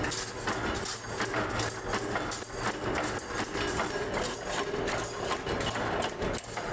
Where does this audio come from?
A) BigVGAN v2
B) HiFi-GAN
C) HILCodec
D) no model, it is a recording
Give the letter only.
D